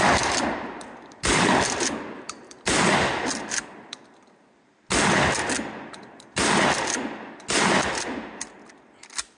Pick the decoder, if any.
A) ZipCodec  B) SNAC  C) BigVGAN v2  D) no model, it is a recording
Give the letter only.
D